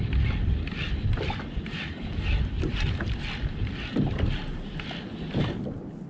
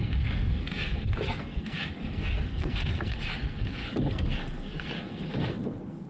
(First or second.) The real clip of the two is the first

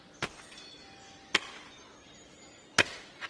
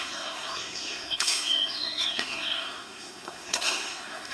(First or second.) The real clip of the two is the first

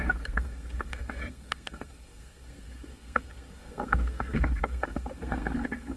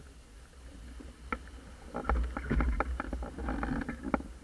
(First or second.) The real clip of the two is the second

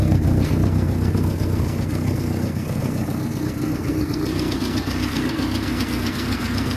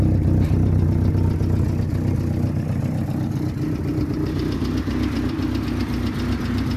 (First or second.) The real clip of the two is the second